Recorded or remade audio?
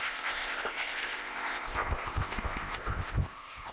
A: remade